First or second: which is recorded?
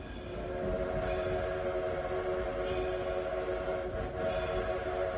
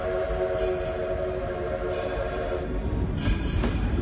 first